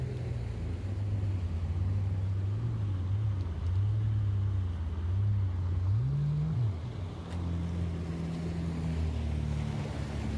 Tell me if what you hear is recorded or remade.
recorded